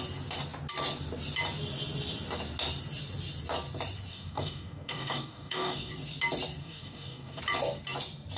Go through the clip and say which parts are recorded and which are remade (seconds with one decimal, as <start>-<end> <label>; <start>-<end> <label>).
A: 0.0-4.1 recorded; 4.1-5.9 remade; 5.9-6.6 recorded; 6.6-7.4 remade; 7.4-8.4 recorded